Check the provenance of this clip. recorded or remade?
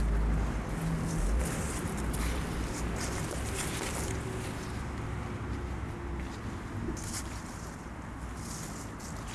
recorded